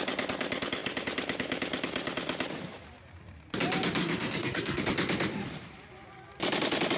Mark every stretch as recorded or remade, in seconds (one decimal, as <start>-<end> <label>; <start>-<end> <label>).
0.0-4.0 recorded; 4.0-4.8 remade; 4.8-7.0 recorded